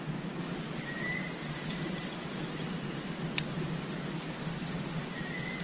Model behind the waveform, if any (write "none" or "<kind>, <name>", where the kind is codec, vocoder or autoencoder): none